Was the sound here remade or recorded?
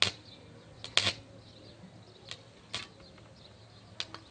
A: recorded